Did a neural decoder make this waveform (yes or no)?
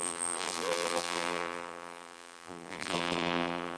yes